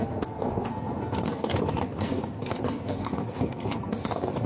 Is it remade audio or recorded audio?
remade